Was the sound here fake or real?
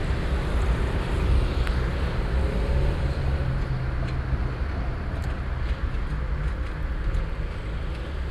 real